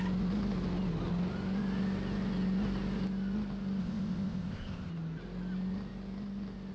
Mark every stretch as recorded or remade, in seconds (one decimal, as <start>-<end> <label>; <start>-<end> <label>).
0.0-3.8 recorded; 3.8-4.9 remade; 4.9-6.7 recorded